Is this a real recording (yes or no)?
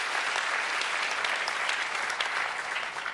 yes